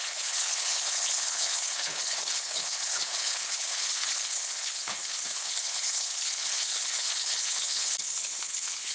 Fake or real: fake